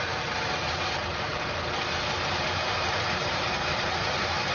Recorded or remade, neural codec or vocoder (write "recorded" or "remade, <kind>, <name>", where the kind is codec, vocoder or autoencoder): remade, vocoder, BigVGAN v2